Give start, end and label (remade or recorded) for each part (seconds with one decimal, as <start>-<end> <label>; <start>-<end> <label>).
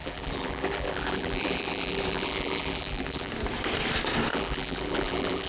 0.0-3.3 remade; 3.3-4.3 recorded; 4.3-5.5 remade